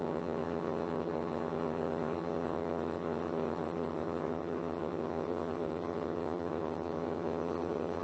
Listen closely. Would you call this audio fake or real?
fake